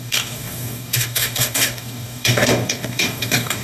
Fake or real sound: fake